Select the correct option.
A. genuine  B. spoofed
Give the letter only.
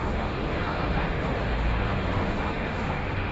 B